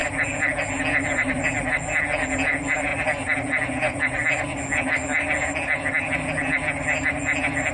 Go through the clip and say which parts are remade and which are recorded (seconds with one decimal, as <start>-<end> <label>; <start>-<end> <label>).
0.0-7.7 recorded